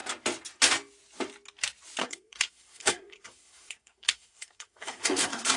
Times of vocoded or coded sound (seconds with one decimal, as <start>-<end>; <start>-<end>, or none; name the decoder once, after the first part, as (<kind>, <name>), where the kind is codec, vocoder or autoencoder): 2.0-5.6 (codec, SNAC)